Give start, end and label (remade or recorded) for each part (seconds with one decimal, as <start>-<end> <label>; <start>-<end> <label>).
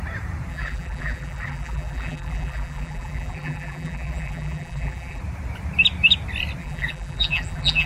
0.0-0.5 recorded; 0.5-5.2 remade; 5.2-6.6 recorded; 6.6-7.9 remade